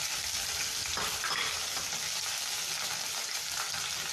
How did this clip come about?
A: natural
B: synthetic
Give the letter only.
A